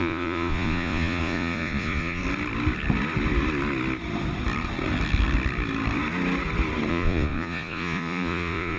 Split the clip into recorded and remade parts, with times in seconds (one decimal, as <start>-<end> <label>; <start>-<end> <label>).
0.0-2.2 remade; 2.2-6.9 recorded; 6.9-8.8 remade